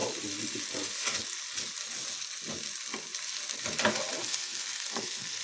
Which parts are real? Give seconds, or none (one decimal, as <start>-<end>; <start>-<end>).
0.0-4.2